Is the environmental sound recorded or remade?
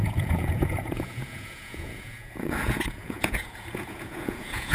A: remade